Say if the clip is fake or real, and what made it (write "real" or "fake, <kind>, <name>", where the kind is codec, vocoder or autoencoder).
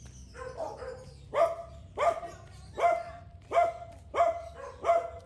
real